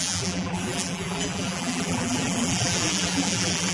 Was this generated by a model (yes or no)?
yes